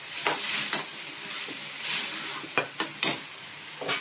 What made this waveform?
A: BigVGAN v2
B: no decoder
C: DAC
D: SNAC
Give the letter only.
B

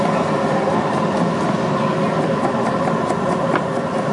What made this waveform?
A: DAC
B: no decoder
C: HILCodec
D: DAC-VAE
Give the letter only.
B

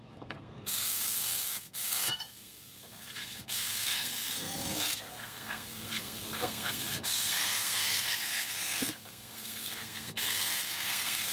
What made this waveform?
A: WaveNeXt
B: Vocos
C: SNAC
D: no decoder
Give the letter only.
C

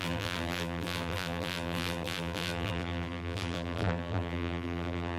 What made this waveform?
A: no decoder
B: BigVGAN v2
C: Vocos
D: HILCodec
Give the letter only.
B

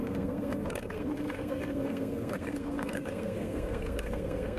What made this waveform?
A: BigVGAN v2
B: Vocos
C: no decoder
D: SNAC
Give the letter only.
D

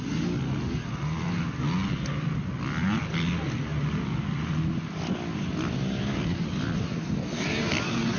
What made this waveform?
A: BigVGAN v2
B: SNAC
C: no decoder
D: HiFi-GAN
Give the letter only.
C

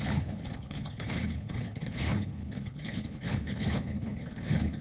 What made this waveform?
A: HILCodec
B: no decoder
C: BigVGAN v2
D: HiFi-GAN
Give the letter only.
A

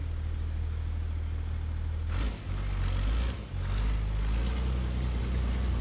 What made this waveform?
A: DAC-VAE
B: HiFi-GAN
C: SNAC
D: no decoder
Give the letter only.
D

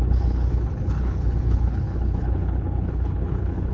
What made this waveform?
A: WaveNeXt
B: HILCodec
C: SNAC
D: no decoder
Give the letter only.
B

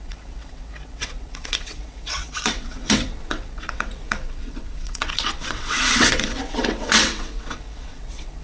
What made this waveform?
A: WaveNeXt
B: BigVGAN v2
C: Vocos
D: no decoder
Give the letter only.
A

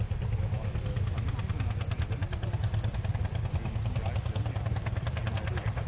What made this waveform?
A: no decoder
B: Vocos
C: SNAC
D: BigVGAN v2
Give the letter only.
A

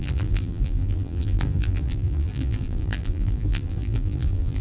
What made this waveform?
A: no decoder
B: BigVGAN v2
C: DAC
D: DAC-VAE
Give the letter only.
B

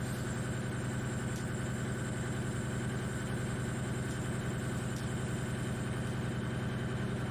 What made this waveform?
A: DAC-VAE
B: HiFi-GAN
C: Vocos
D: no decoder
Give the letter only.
D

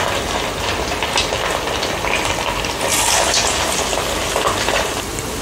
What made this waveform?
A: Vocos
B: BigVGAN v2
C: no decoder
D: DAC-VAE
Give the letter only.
C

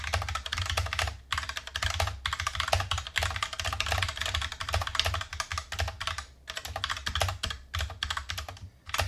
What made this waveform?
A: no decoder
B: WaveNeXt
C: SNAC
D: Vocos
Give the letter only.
A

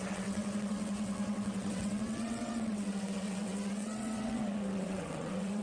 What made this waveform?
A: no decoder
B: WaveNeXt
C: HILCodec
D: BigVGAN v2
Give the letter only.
B